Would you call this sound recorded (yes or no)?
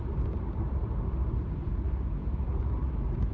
yes